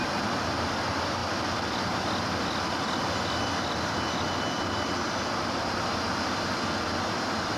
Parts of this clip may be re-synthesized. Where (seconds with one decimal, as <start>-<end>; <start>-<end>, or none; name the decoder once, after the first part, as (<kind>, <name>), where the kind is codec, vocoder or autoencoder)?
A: none